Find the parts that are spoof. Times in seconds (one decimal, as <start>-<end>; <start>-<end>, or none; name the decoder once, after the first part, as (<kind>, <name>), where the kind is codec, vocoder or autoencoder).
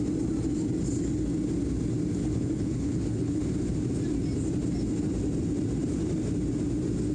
2.2-3.4 (codec, HILCodec)